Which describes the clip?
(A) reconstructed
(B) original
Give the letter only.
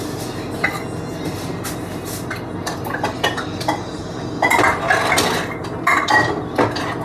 B